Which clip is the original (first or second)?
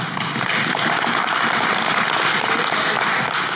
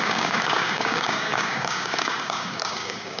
first